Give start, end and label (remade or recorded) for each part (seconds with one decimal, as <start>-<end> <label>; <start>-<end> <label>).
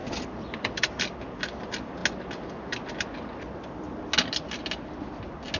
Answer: 0.0-5.6 recorded